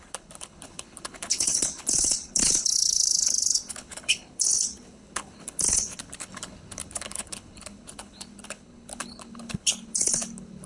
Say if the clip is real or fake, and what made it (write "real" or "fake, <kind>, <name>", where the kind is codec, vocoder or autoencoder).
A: fake, codec, HILCodec